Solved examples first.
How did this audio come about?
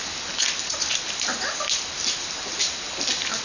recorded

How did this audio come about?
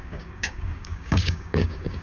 remade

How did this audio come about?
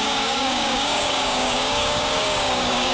remade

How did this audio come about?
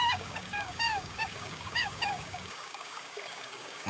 remade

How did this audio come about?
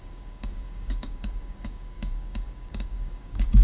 remade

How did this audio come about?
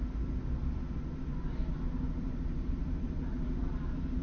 recorded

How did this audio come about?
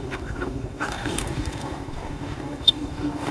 remade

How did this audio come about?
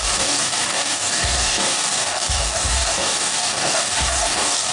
remade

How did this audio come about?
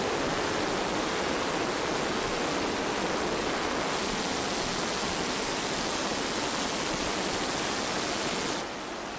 recorded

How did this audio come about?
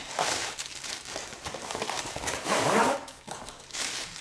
remade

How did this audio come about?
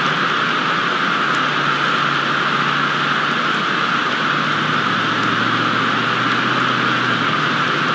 recorded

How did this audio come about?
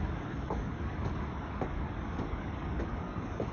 remade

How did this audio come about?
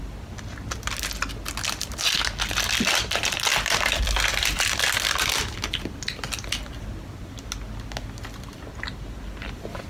recorded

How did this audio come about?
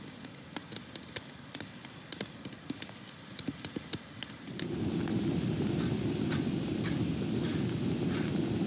recorded